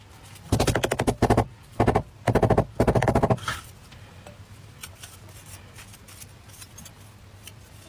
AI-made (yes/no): no